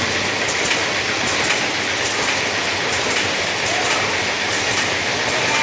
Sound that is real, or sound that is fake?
real